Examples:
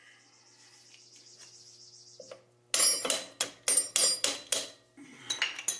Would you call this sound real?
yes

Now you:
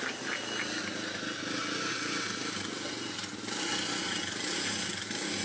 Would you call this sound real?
yes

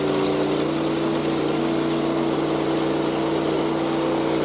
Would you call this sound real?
yes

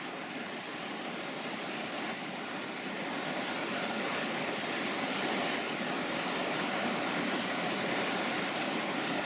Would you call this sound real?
yes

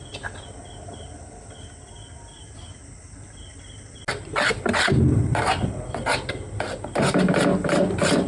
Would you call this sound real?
yes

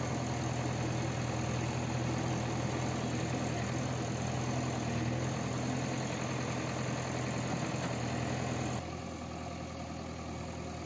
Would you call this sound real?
yes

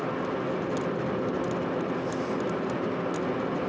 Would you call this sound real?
yes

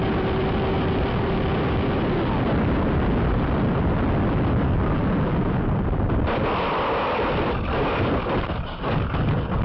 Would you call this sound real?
no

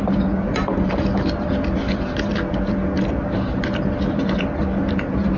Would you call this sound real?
yes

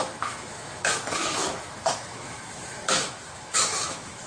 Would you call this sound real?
no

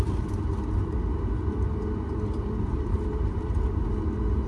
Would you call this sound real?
yes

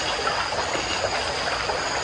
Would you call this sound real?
yes